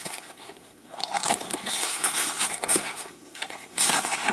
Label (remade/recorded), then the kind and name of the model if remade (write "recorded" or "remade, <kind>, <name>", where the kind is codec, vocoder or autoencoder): remade, codec, SNAC